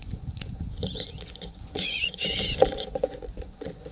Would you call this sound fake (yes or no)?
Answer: yes